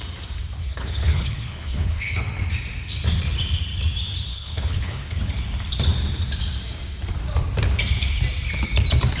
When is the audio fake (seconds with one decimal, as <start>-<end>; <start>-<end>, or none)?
0.6-2.2; 4.3-5.3